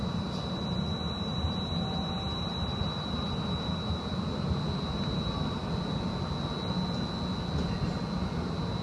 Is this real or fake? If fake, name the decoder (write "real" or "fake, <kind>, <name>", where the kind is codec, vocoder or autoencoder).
real